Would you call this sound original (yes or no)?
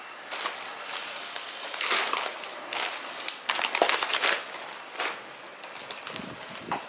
no